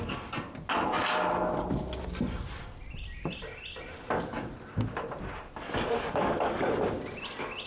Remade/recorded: recorded